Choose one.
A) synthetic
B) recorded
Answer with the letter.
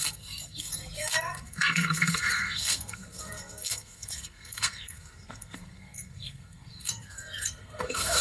A